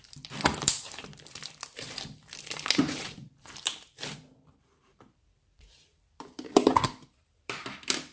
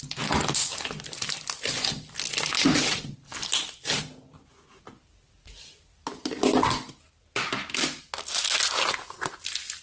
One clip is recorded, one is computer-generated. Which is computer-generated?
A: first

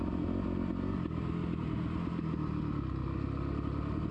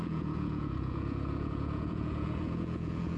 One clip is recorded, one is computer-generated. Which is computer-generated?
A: second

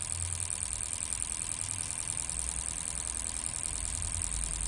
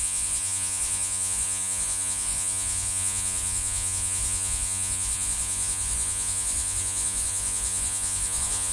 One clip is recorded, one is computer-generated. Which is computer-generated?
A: second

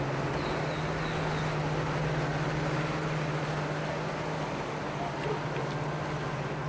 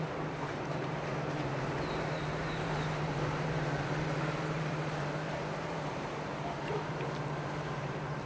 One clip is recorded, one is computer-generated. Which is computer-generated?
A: second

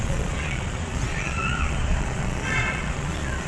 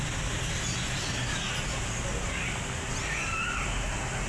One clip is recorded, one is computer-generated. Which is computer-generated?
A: first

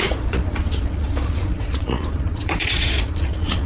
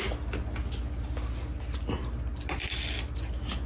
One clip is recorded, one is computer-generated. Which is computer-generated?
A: first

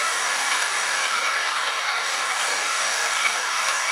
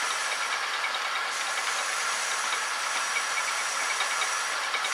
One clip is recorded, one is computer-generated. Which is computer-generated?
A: first